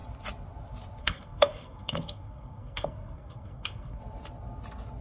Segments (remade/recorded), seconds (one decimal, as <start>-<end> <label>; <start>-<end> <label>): 0.0-1.0 recorded; 1.0-4.0 remade; 4.0-5.0 recorded